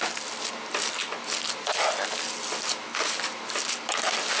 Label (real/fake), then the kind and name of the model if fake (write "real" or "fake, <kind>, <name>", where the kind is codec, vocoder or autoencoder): real